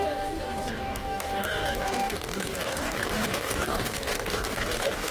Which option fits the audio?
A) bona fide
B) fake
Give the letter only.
B